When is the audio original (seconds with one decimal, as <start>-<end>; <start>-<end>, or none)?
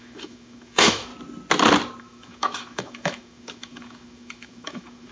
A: 1.1-2.0